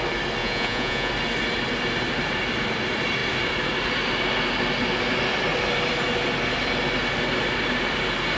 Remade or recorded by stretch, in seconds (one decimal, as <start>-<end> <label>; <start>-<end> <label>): 0.0-0.4 recorded; 0.4-1.1 remade; 1.1-8.4 recorded